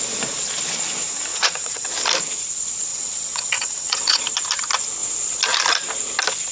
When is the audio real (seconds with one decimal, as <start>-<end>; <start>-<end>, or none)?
0.0-1.3; 1.9-2.9; 4.2-6.5